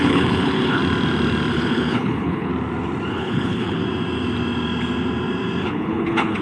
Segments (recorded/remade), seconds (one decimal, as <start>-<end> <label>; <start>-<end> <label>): 0.0-0.8 remade; 0.8-1.5 recorded; 1.5-2.5 remade; 2.5-3.1 recorded; 3.1-3.8 remade; 3.8-5.6 recorded; 5.6-6.4 remade